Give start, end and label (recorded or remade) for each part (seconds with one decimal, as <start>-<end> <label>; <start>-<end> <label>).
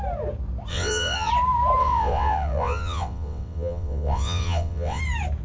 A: 0.0-0.7 recorded; 0.7-1.3 remade; 1.3-1.8 recorded; 1.8-5.0 remade; 5.0-5.4 recorded